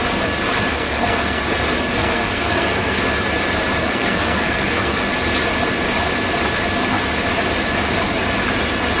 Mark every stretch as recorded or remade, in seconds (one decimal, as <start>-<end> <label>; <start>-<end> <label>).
0.0-0.7 recorded; 0.7-1.4 remade; 1.4-2.0 recorded; 2.0-3.0 remade; 3.0-3.8 recorded; 3.8-5.0 remade; 5.0-9.0 recorded